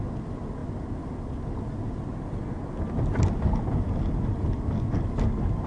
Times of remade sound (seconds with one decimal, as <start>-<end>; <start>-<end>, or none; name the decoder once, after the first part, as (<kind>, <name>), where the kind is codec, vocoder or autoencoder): none